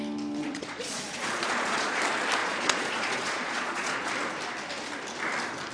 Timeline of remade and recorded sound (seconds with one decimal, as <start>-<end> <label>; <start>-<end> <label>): 0.0-0.4 recorded; 0.4-2.0 remade; 2.0-2.4 recorded; 2.4-4.1 remade; 4.1-5.7 recorded